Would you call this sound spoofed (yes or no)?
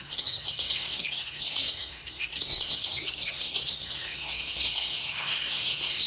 yes